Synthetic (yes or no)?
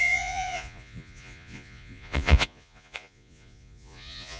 yes